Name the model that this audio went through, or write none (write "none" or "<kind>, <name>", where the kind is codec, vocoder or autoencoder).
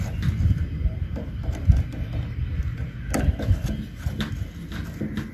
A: none